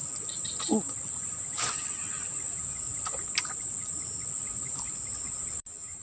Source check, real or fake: real